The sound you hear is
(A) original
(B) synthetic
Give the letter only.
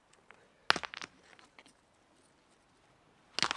A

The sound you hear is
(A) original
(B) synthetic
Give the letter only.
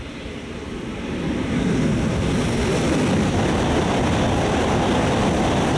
A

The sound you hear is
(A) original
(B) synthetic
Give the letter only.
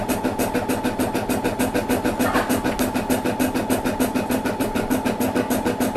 A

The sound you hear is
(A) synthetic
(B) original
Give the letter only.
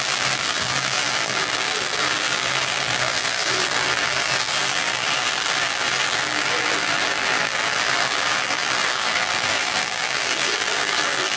A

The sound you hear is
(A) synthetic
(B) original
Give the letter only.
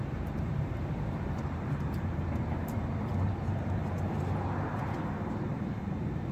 A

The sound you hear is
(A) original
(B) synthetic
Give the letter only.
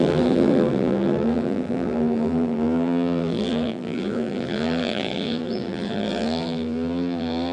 B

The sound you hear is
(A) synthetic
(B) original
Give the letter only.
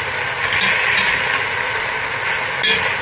B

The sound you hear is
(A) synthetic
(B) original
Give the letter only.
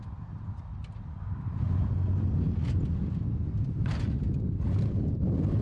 B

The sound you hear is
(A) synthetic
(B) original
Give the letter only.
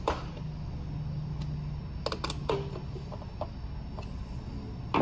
B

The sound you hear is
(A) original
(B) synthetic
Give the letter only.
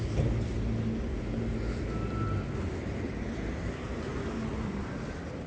A